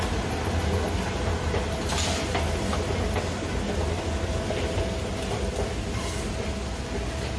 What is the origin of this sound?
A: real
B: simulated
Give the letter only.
A